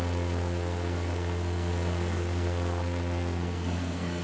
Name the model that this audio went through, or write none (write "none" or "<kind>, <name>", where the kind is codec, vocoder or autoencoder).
codec, SNAC